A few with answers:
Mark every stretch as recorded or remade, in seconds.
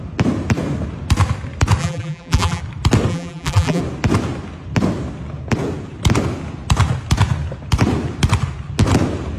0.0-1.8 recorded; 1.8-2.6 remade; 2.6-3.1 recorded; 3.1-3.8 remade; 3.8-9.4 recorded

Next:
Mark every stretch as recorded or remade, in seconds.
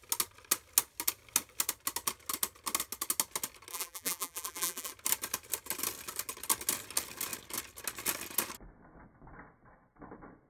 0.0-3.7 recorded; 3.7-4.9 remade; 4.9-10.5 recorded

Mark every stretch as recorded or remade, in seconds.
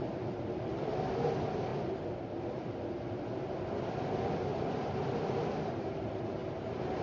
0.0-1.7 remade; 1.7-3.9 recorded; 3.9-6.4 remade; 6.4-7.0 recorded